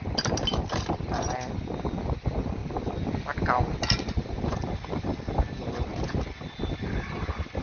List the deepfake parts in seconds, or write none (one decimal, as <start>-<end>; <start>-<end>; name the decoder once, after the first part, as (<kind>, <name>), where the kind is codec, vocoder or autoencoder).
none